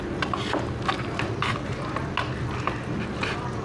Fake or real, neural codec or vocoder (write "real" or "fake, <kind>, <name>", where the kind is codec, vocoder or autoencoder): real